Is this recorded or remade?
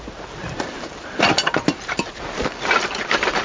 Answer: remade